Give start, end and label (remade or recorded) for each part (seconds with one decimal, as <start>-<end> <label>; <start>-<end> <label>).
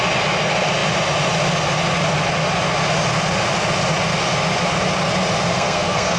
0.0-5.5 recorded; 5.5-6.2 remade